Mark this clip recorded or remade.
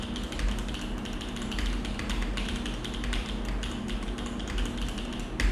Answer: recorded